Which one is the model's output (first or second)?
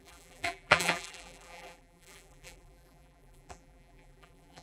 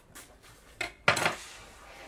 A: first